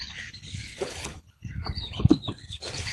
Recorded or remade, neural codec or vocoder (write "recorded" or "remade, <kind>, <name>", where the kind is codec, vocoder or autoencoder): remade, codec, HILCodec